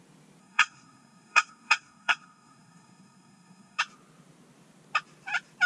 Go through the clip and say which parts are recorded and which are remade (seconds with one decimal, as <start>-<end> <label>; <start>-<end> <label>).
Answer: 0.0-0.4 recorded; 0.4-3.8 remade; 3.8-5.7 recorded

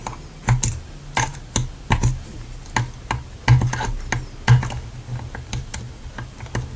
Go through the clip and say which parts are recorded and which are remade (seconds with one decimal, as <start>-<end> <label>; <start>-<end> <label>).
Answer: 0.0-6.8 recorded

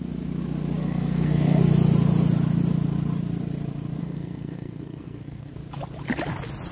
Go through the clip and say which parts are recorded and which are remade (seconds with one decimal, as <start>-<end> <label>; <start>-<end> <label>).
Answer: 0.0-0.8 recorded; 0.8-1.6 remade; 1.6-4.0 recorded; 4.0-5.5 remade; 5.5-6.7 recorded

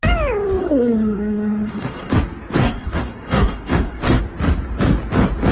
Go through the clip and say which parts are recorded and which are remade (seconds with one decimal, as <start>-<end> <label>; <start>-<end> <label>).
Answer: 0.0-0.6 recorded; 0.6-2.1 remade; 2.1-2.6 recorded; 2.6-4.2 remade; 4.2-5.5 recorded

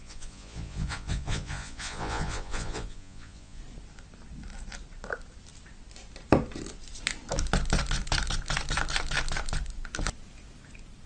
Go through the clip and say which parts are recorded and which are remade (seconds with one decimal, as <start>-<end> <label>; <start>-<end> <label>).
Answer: 0.0-3.6 remade; 3.6-11.1 recorded

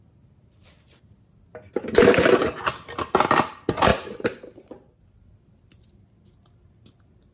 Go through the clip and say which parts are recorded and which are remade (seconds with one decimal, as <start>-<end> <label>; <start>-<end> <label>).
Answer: 0.0-3.9 recorded; 3.9-5.0 remade; 5.0-7.3 recorded

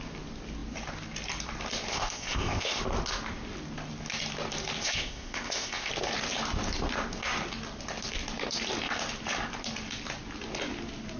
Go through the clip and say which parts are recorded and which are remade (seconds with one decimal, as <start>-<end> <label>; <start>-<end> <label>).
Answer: 0.0-1.9 recorded; 1.9-2.8 remade; 2.8-4.8 recorded; 4.8-5.9 remade; 5.9-11.2 recorded

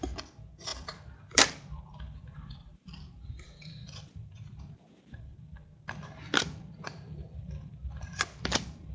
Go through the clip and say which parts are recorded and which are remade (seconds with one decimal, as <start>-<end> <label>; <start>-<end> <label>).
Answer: 0.0-5.3 remade; 5.3-5.9 recorded; 5.9-8.9 remade